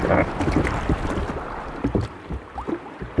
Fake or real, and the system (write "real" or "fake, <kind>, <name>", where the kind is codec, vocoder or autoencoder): real